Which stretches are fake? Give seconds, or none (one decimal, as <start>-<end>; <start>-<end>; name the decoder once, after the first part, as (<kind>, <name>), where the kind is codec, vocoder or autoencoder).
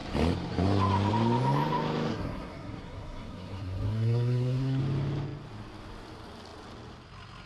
2.1-4.8 (codec, SNAC)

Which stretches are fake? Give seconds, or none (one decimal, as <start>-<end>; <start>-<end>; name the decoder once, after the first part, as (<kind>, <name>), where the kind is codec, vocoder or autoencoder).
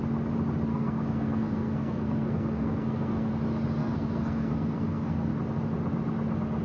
0.7-3.3 (codec, SNAC); 3.8-5.3